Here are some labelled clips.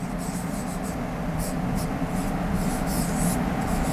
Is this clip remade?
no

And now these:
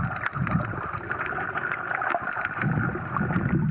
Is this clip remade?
no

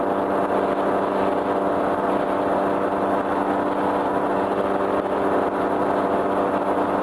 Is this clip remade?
no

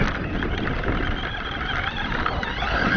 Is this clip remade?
no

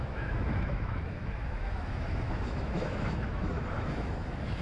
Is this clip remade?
yes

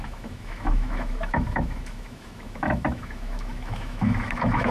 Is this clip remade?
yes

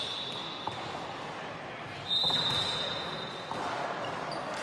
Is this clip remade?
no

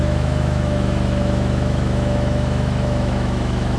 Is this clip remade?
yes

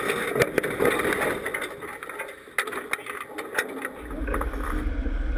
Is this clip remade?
no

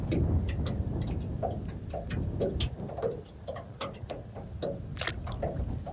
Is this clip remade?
no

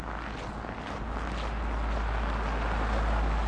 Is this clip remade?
no